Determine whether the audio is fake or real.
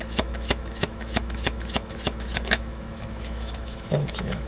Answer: fake